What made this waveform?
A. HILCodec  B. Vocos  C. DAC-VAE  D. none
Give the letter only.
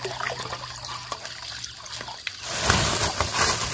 D